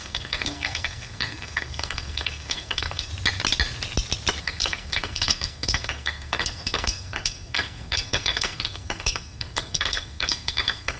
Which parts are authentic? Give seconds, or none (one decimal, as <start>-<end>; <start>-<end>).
3.1-4.4